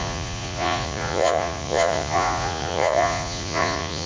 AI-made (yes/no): yes